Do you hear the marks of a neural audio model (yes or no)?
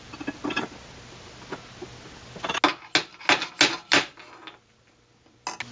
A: no